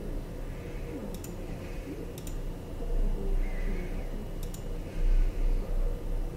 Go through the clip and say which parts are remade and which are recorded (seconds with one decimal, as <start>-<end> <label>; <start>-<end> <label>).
0.0-6.4 recorded